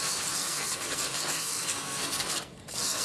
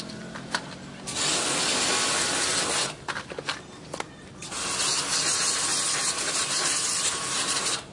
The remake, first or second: first